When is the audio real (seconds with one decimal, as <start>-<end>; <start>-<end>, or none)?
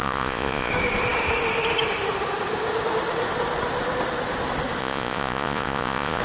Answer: 0.7-4.8